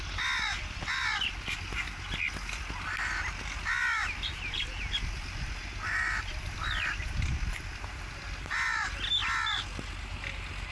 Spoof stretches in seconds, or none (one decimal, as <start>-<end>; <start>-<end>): none